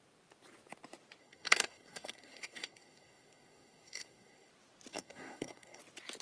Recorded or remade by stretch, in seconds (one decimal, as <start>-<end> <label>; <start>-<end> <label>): 0.0-1.2 recorded; 1.2-4.5 remade; 4.5-4.9 recorded; 4.9-5.8 remade; 5.8-6.2 recorded